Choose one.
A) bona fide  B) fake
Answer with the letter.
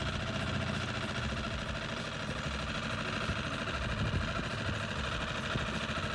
A